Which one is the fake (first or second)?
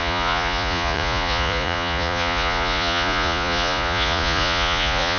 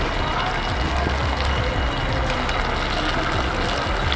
first